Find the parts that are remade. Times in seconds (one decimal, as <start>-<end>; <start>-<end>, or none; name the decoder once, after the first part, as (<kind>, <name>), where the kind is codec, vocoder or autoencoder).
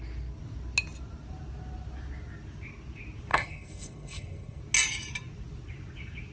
3.3-4.6 (codec, SNAC)